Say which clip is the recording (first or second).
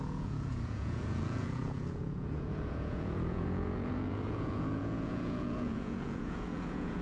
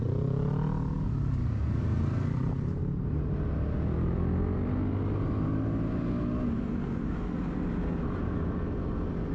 second